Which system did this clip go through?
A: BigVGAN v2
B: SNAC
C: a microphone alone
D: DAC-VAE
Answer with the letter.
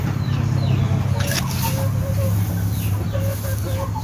C